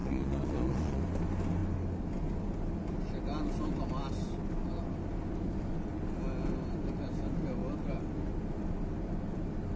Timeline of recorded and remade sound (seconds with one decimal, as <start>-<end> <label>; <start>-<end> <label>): 0.0-1.0 remade; 1.0-9.8 recorded